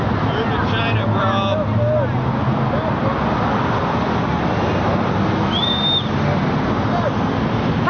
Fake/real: real